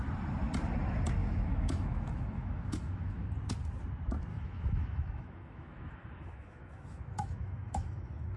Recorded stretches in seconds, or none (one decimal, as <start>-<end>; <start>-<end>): 0.0-1.2; 3.3-4.3